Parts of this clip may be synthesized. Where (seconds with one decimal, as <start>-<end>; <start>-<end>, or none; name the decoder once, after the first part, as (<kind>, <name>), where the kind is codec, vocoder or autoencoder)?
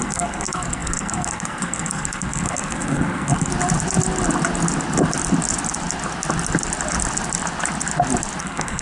0.0-3.5 (codec, SNAC); 8.4-8.8